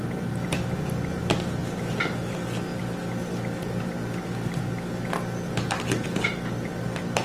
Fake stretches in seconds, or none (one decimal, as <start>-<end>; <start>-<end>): none